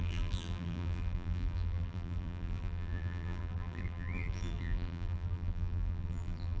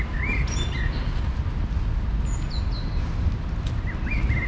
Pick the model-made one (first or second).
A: first